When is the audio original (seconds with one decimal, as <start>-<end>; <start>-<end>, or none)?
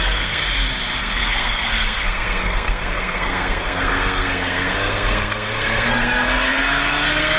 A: 0.4-1.0